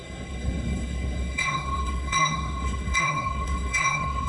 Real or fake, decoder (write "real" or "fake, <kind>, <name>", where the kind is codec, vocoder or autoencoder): fake, codec, SNAC